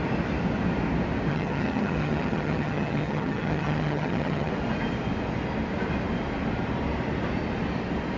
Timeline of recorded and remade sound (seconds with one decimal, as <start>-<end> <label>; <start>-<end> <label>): 0.0-1.3 recorded; 1.3-4.5 remade; 4.5-8.2 recorded